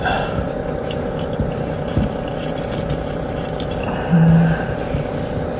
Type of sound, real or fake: real